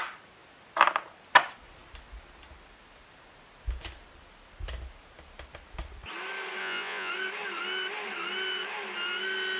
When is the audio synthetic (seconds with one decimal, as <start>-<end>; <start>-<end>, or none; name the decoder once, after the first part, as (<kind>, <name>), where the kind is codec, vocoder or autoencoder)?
6.6-7.1 (vocoder, Vocos)